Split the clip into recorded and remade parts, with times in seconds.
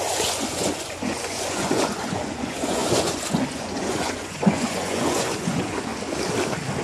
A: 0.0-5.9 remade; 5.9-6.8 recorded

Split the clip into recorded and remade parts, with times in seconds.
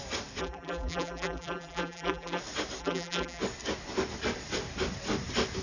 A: 0.0-0.4 recorded; 0.4-2.4 remade; 2.4-2.8 recorded; 2.8-3.4 remade; 3.4-5.6 recorded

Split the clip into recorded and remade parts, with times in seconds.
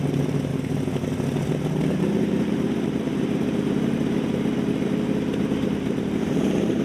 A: 0.0-0.5 remade; 0.5-1.9 recorded; 1.9-6.8 remade